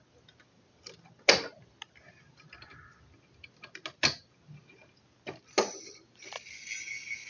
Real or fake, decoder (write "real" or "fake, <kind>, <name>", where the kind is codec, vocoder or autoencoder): real